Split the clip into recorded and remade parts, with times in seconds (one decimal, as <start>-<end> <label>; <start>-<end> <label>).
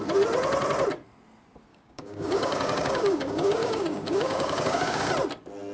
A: 0.0-1.7 recorded; 1.7-5.1 remade; 5.1-5.7 recorded